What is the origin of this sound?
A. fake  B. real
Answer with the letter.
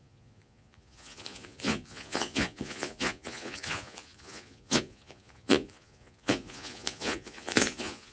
A